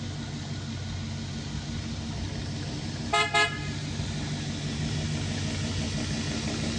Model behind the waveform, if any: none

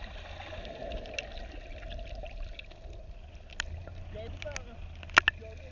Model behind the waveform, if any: none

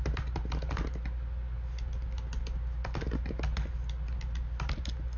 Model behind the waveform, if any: none